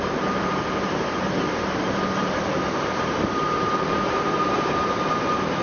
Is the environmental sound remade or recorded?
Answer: remade